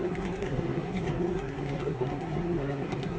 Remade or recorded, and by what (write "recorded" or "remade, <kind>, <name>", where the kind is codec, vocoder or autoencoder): remade, codec, SNAC